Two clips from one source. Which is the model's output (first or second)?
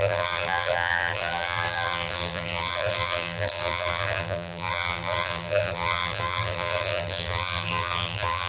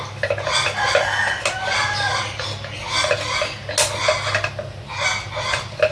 first